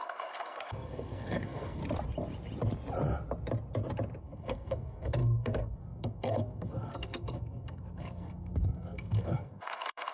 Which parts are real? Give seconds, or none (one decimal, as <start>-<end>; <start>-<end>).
1.8-4.2